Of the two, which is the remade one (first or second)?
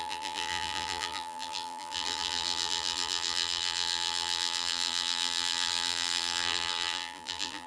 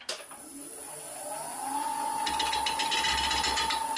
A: first